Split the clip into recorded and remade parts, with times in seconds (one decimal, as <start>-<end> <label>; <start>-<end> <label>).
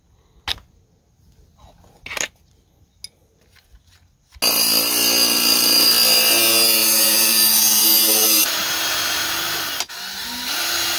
0.0-6.8 recorded; 6.8-8.5 remade; 8.5-11.0 recorded